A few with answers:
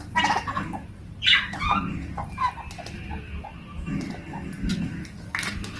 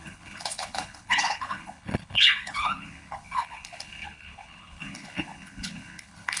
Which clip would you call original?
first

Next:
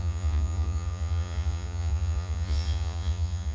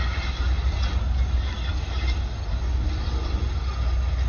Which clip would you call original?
second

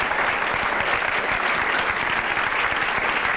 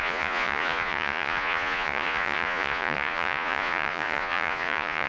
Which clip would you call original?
first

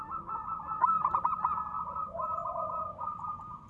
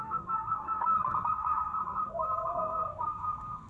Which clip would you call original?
first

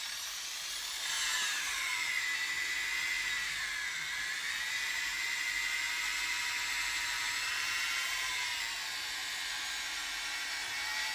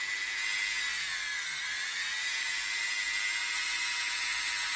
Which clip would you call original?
second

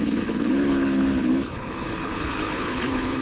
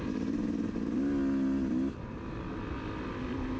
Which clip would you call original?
second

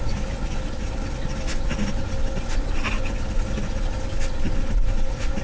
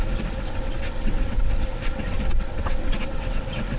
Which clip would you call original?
first